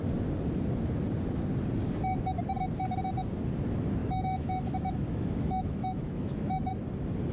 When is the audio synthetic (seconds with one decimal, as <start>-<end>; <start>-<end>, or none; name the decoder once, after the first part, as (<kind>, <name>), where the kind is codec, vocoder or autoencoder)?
4.0-6.7 (autoencoder, DAC-VAE)